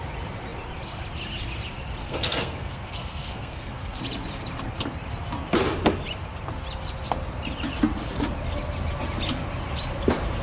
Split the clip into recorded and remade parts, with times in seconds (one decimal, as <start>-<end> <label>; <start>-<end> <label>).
0.0-2.0 recorded; 2.0-4.0 remade; 4.0-10.4 recorded

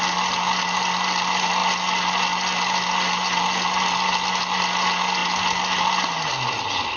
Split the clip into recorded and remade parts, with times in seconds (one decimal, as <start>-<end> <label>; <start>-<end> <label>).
0.0-7.0 recorded

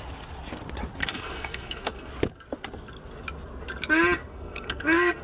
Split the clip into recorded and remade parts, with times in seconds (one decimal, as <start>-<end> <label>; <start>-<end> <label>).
0.0-1.0 recorded; 1.0-2.1 remade; 2.1-4.3 recorded; 4.3-5.2 remade

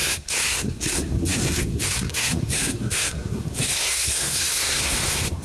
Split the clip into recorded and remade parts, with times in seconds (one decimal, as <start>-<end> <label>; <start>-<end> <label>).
0.0-5.4 remade

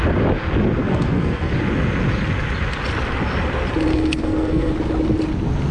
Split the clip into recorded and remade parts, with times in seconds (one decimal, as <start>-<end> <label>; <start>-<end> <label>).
0.0-0.8 recorded; 0.8-1.5 remade; 1.5-3.9 recorded; 3.9-4.7 remade; 4.7-5.7 recorded

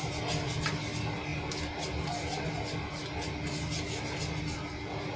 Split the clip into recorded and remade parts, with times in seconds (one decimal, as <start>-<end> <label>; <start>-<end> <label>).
0.0-5.2 recorded